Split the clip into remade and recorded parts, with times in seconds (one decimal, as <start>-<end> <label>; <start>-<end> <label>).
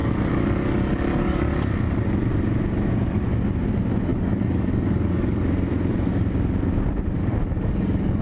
0.0-1.5 remade; 1.5-4.1 recorded; 4.1-5.4 remade; 5.4-7.2 recorded; 7.2-8.2 remade